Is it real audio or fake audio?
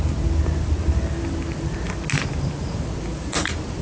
real